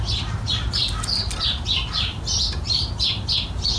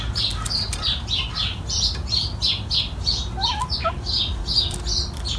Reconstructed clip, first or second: first